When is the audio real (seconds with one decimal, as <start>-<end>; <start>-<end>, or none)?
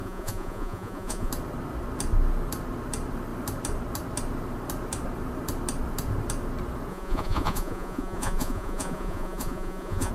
1.3-6.9